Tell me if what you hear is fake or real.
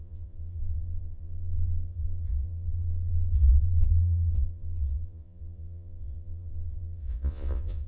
fake